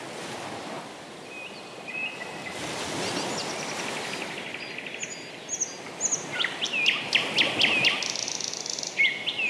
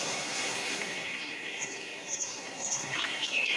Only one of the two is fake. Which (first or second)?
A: second